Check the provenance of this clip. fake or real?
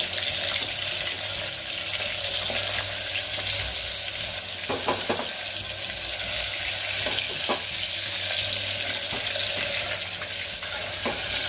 real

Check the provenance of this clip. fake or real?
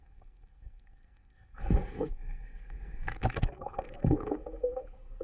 fake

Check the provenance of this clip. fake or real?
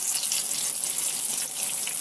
real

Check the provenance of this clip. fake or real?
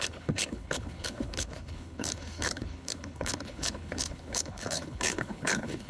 fake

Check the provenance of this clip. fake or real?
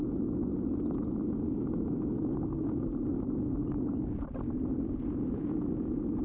real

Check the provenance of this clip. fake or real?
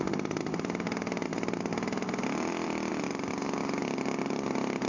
real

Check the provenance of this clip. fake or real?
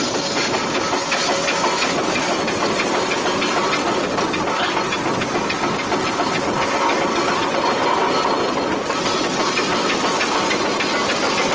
real